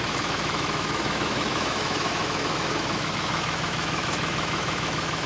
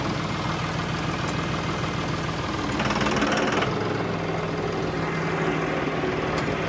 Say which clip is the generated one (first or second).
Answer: first